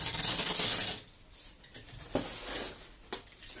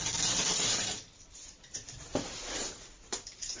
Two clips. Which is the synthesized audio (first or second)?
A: second